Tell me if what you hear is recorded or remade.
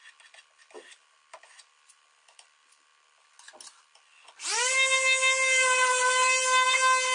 recorded